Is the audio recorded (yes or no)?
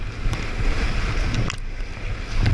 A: yes